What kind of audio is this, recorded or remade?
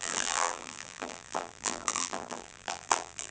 remade